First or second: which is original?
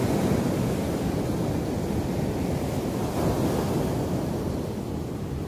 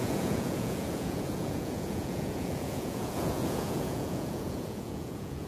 first